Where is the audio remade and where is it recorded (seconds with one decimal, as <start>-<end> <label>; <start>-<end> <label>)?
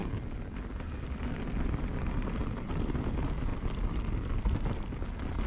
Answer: 0.0-5.5 recorded